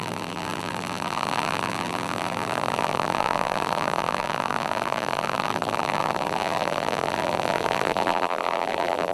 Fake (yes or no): yes